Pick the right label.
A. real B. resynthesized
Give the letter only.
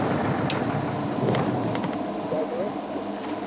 A